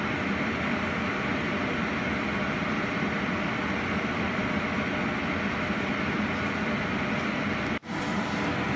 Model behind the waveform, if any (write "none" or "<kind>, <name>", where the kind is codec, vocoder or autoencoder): none